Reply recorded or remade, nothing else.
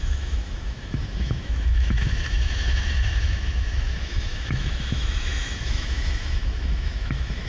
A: remade